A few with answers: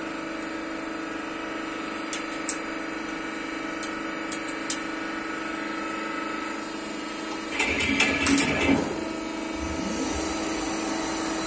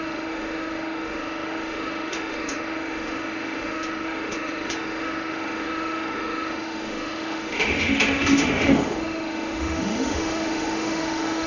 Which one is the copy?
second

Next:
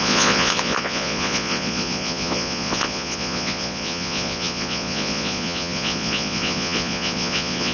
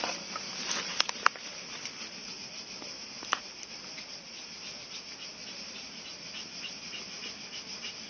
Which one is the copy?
first